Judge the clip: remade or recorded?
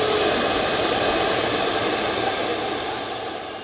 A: remade